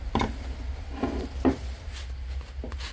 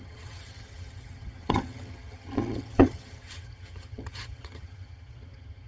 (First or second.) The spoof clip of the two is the second